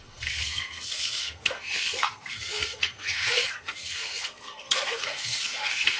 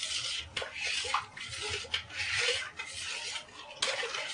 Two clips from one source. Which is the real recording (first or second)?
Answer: second